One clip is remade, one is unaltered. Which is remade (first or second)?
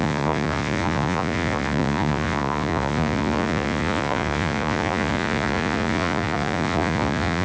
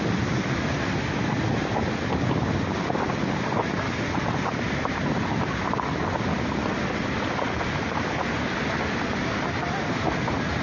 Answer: first